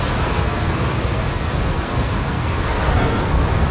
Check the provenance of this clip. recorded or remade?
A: remade